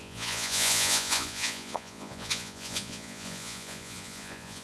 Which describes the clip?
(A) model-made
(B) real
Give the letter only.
A